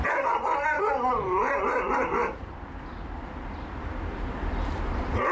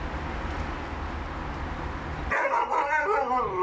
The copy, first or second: first